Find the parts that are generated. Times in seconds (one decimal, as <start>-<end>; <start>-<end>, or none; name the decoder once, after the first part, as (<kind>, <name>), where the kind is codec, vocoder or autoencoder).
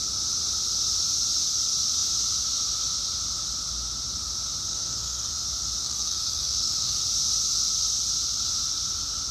4.7-5.3 (codec, SNAC); 5.8-7.0